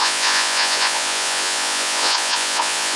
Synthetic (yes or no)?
yes